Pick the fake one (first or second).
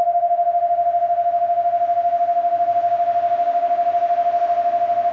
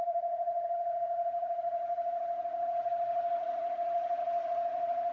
second